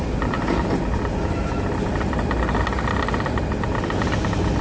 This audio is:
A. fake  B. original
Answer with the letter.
B